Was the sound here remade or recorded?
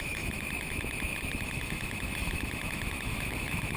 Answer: remade